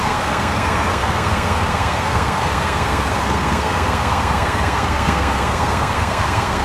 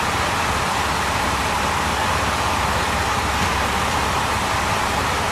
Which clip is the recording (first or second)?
second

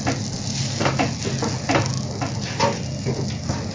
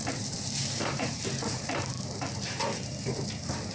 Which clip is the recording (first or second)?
first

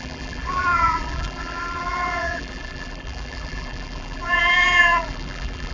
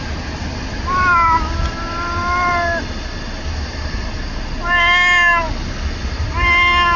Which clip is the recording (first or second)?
second